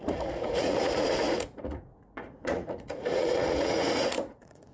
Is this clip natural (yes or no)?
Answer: no